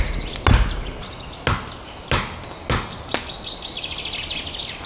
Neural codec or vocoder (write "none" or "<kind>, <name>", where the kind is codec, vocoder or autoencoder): none